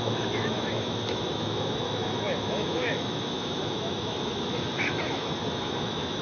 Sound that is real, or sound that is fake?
fake